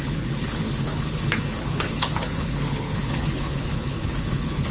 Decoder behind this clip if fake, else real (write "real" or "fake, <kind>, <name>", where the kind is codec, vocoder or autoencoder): fake, codec, HILCodec